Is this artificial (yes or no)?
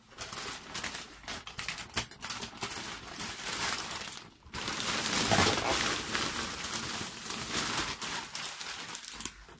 no